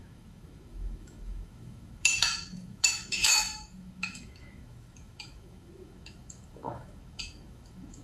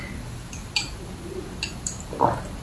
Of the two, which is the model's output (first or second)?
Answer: first